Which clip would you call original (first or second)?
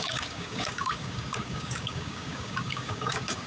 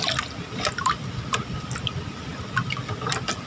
second